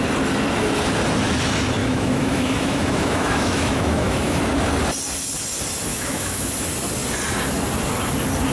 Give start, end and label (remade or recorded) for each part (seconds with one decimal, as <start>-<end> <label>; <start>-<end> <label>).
0.0-1.8 recorded; 1.8-4.4 remade; 4.4-5.9 recorded; 5.9-6.5 remade; 6.5-8.5 recorded